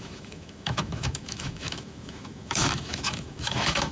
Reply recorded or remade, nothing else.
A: remade